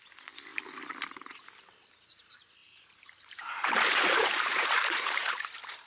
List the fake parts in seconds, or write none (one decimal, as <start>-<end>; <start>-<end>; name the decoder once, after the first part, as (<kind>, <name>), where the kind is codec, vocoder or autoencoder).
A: 2.6-5.9 (vocoder, BigVGAN v2)